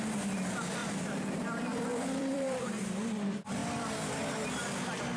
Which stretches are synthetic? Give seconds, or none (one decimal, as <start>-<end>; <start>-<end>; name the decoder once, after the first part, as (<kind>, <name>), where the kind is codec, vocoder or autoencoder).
0.8-2.6 (vocoder, BigVGAN v2); 3.6-4.2